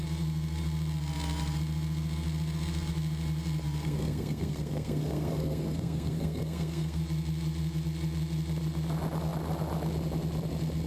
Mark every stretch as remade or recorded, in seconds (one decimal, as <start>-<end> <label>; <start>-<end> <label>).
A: 0.0-3.8 recorded; 3.8-7.0 remade; 7.0-10.9 recorded

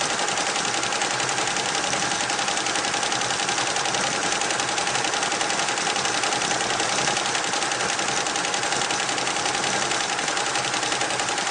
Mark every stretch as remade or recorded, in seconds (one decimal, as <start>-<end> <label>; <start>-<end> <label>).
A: 0.0-11.5 recorded